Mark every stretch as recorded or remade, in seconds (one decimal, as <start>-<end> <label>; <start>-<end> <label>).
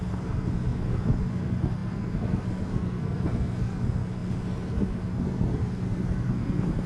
0.0-6.9 remade